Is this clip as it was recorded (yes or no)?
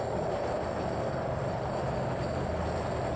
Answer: yes